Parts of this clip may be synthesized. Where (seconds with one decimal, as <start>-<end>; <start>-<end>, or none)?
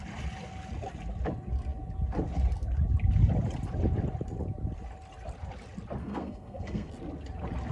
6.0-6.9